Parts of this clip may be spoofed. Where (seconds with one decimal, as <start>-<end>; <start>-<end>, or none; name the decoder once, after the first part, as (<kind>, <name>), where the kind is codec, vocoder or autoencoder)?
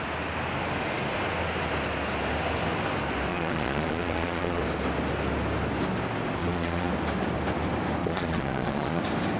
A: 3.3-4.6 (vocoder, Vocos); 6.4-6.9; 8.0-9.0